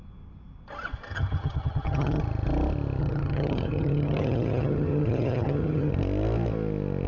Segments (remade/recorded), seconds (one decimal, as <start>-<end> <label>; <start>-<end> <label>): 0.0-1.1 recorded; 1.1-2.2 remade; 2.2-3.0 recorded; 3.0-5.9 remade; 5.9-7.1 recorded